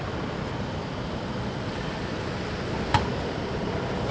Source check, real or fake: real